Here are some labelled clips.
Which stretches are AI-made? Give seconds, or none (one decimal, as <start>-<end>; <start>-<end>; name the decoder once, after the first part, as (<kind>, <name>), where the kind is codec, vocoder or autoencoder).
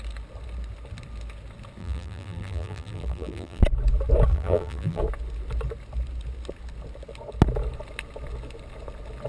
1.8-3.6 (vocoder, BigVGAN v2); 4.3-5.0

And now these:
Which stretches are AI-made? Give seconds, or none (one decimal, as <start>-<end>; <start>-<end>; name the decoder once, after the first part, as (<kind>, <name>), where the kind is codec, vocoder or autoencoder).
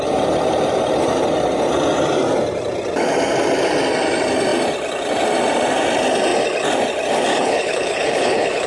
7.3-8.7 (codec, HILCodec)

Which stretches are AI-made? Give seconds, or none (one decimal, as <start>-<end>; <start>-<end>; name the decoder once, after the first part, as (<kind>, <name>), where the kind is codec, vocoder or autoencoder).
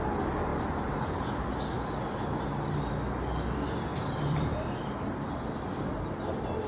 3.9-6.0 (vocoder, BigVGAN v2)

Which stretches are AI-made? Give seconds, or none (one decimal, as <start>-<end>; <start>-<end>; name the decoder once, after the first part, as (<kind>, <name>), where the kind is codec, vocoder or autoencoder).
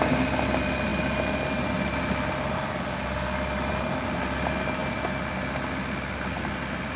none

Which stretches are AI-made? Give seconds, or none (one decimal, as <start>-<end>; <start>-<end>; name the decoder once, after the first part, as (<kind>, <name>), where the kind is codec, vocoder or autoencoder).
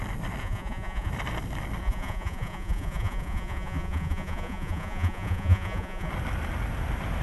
0.4-1.1 (vocoder, Vocos); 1.8-6.1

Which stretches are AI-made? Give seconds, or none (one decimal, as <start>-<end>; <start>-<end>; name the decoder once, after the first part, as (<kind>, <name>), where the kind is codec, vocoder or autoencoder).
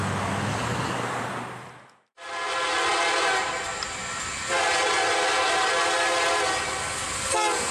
0.7-1.3 (vocoder, BigVGAN v2)